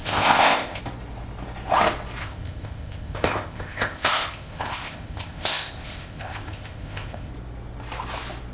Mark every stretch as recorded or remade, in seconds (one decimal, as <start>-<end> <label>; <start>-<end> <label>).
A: 0.0-0.8 remade; 0.8-2.2 recorded; 2.2-7.3 remade; 7.3-8.5 recorded

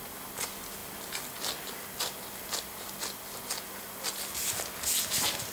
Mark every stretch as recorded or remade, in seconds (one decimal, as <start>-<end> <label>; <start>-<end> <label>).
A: 0.0-5.5 recorded

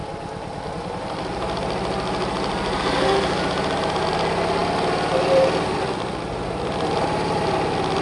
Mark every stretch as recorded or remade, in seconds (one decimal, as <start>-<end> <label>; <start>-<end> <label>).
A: 0.0-8.0 recorded

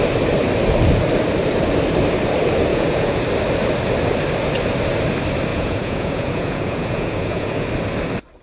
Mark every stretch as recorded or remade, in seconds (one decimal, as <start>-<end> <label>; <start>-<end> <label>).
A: 0.0-2.7 recorded; 2.7-3.2 remade; 3.2-5.5 recorded; 5.5-7.7 remade; 7.7-8.4 recorded